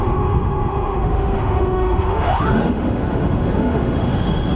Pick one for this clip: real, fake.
fake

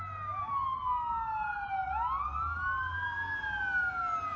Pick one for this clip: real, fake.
real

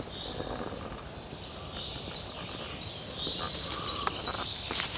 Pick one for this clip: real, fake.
real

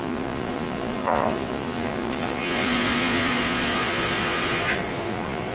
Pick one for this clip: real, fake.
fake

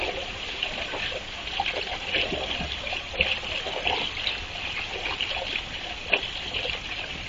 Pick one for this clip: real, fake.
real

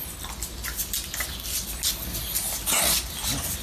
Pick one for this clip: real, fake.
real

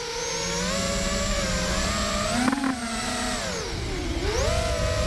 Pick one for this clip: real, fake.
real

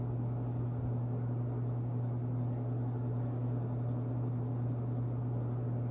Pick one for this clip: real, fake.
real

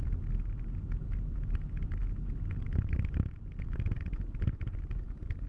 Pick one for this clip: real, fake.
real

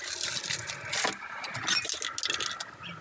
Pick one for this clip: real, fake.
real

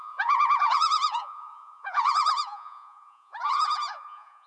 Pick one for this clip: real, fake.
fake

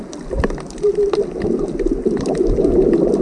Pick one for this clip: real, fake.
real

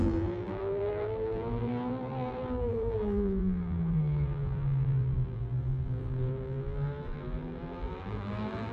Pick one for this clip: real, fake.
fake